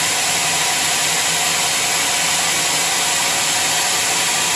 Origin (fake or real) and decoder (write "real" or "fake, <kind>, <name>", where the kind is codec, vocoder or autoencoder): real